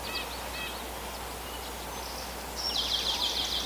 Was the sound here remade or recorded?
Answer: recorded